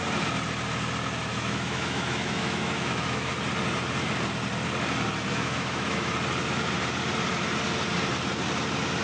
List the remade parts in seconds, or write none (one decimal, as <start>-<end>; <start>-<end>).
1.3-3.3; 5.3-6.1